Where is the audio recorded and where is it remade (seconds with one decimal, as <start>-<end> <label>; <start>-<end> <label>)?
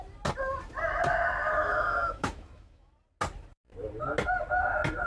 0.0-1.4 recorded; 1.4-2.9 remade; 2.9-5.1 recorded